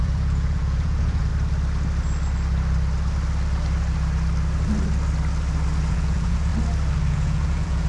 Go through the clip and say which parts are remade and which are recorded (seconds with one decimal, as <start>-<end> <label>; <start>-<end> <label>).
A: 0.0-1.3 remade; 1.3-5.9 recorded; 5.9-6.5 remade; 6.5-7.1 recorded; 7.1-7.9 remade